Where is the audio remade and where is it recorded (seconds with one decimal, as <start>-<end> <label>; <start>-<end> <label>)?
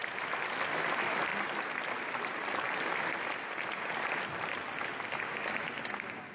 0.0-1.3 recorded; 1.3-4.9 remade; 4.9-6.3 recorded